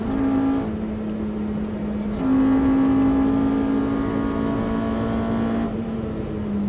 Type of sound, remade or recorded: recorded